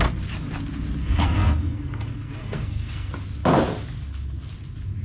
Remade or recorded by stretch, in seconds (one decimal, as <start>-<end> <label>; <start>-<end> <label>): 0.0-1.0 recorded; 1.0-3.1 remade; 3.1-5.0 recorded